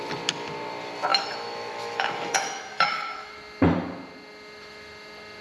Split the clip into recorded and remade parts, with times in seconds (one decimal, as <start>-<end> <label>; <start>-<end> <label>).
0.0-1.1 recorded; 1.1-3.3 remade; 3.3-5.4 recorded